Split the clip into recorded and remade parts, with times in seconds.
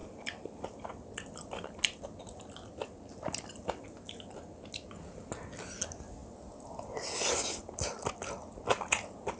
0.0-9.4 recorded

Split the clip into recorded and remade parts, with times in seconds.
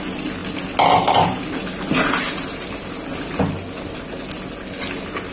0.0-5.3 recorded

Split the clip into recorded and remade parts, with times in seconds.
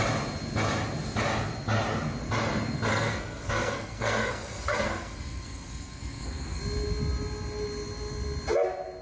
0.0-2.9 recorded; 2.9-6.6 remade; 6.6-9.0 recorded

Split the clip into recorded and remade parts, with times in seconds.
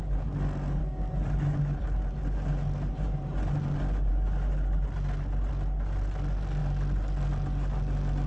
0.0-8.3 recorded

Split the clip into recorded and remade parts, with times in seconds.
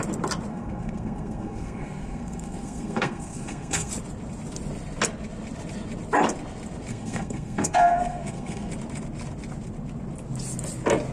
0.0-0.5 recorded; 0.5-3.9 remade; 3.9-6.9 recorded; 6.9-8.7 remade; 8.7-11.1 recorded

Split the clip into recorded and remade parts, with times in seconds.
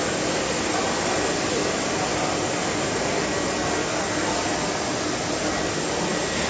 0.0-6.5 recorded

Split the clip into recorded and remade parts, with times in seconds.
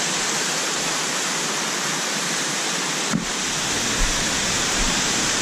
0.0-0.6 recorded; 0.6-1.1 remade; 1.1-4.4 recorded; 4.4-4.9 remade; 4.9-5.4 recorded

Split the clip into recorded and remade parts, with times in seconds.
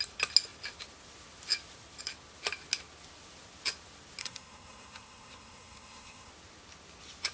0.0-4.2 recorded; 4.2-6.3 remade; 6.3-7.3 recorded